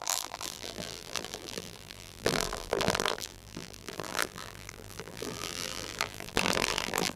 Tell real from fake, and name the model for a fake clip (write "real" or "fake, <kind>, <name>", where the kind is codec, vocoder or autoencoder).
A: fake, vocoder, BigVGAN v2